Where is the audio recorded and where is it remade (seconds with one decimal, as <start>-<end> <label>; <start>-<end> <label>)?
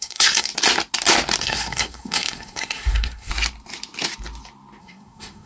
0.0-0.5 remade; 0.5-1.4 recorded; 1.4-3.3 remade; 3.3-4.8 recorded; 4.8-5.5 remade